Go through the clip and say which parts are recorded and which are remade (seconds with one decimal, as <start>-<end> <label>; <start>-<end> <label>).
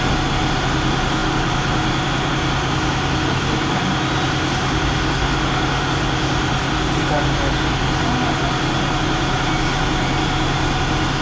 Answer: 0.0-11.2 recorded